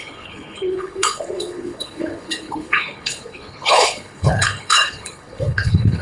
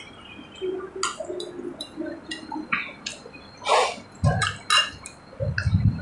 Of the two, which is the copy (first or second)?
first